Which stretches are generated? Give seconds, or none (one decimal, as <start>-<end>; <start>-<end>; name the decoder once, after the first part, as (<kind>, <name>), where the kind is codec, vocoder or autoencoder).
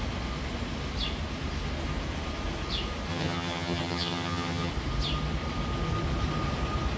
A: 3.1-4.7 (vocoder, HiFi-GAN)